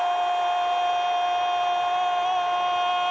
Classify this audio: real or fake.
real